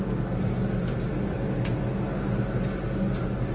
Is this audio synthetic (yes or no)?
no